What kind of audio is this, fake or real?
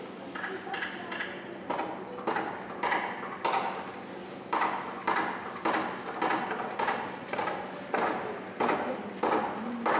real